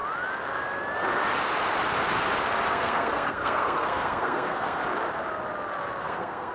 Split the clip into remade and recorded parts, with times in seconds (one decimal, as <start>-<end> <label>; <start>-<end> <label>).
0.0-2.7 recorded; 2.7-4.8 remade; 4.8-6.0 recorded; 6.0-6.5 remade

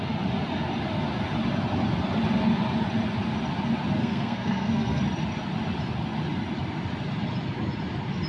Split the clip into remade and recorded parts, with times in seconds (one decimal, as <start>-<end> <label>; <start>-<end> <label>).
0.0-4.0 recorded; 4.0-5.0 remade; 5.0-8.3 recorded